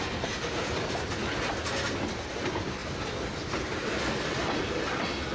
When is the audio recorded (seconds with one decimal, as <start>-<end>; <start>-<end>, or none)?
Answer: 1.2-2.3; 2.8-3.3